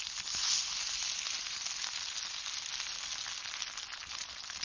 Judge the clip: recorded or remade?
recorded